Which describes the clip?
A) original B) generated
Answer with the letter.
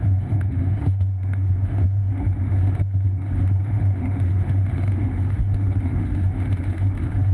B